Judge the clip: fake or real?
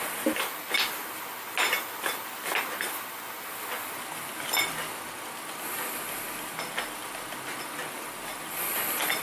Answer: real